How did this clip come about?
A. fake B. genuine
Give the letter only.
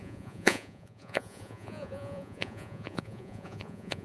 A